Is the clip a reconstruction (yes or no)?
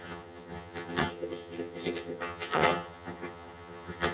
yes